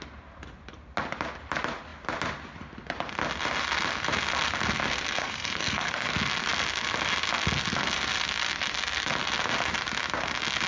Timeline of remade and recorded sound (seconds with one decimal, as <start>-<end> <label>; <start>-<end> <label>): 0.0-5.2 recorded; 5.2-6.1 remade; 6.1-10.7 recorded